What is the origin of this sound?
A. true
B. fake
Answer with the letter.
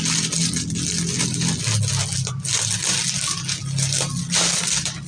A